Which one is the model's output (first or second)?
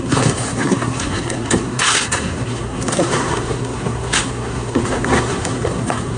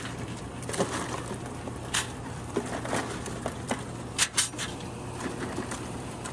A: first